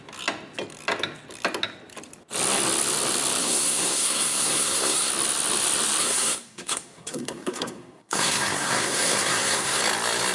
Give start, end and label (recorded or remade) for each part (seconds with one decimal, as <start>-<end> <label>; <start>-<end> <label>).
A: 0.0-3.4 recorded; 3.4-5.1 remade; 5.1-6.0 recorded; 6.0-9.8 remade; 9.8-10.3 recorded